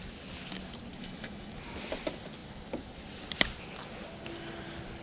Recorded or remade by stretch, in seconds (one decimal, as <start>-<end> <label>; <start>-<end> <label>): 0.0-1.0 recorded; 1.0-1.5 remade; 1.5-5.0 recorded